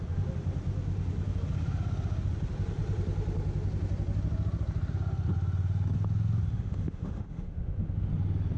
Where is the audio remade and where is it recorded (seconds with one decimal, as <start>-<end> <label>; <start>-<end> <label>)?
0.0-6.5 recorded; 6.5-8.1 remade; 8.1-8.6 recorded

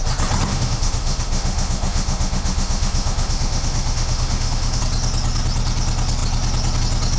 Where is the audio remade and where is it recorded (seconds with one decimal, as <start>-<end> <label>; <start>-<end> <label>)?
0.0-0.5 recorded; 0.5-4.8 remade; 4.8-7.2 recorded

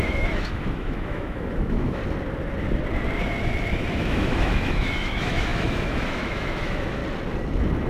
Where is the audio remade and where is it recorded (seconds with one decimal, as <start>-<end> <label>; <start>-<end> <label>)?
0.0-2.0 remade; 2.0-3.9 recorded; 3.9-7.0 remade; 7.0-7.9 recorded

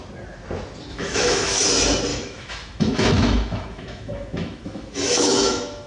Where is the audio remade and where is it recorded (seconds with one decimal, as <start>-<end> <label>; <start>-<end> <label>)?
0.0-0.9 recorded; 0.9-1.6 remade; 1.6-2.1 recorded; 2.1-5.9 remade